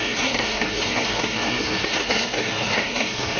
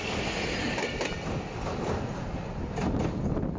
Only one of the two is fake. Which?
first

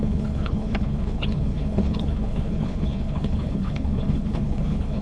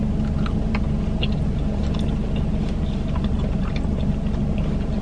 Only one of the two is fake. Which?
first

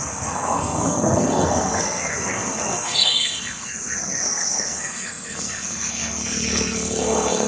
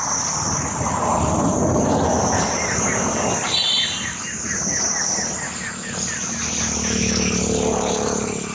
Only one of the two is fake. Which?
first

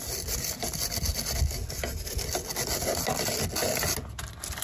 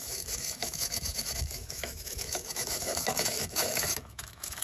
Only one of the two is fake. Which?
second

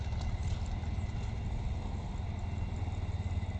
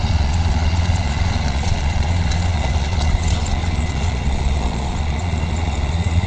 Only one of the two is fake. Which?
second